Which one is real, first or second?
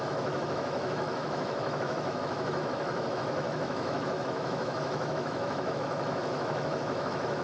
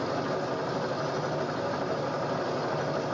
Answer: second